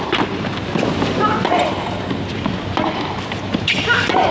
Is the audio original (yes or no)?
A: yes